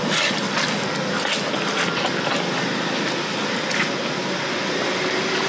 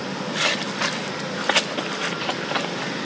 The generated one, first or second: second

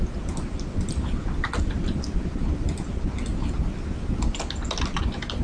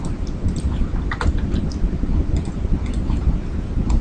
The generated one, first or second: second